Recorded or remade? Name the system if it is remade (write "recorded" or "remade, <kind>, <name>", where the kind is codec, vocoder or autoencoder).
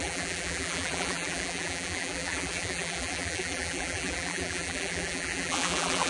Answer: remade, vocoder, BigVGAN v2